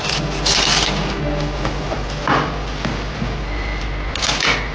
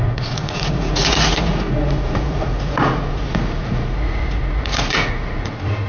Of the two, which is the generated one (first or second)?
second